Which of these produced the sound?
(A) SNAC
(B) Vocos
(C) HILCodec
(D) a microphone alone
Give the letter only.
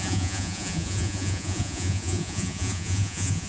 B